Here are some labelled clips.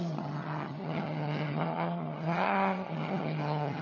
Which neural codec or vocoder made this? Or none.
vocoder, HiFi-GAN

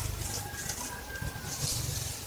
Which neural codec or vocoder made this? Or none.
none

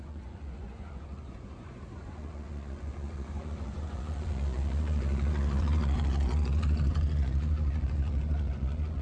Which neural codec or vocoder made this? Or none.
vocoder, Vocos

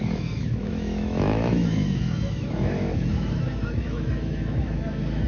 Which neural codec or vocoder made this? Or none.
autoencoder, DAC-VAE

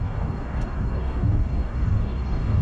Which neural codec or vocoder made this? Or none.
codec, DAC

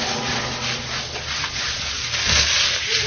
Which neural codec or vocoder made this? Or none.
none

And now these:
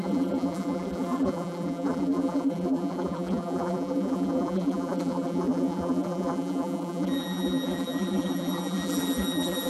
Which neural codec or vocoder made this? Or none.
vocoder, BigVGAN v2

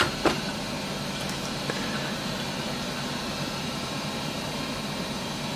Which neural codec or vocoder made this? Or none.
vocoder, BigVGAN v2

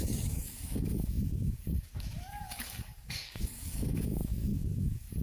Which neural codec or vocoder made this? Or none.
codec, DAC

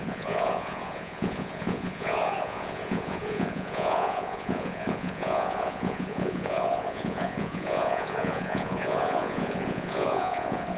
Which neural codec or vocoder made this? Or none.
vocoder, Vocos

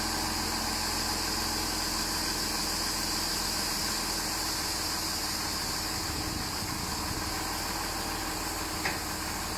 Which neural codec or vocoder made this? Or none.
none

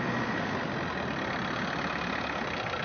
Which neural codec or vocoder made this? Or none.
none